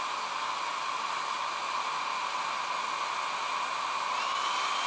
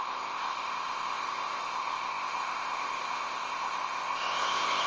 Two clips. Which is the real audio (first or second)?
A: first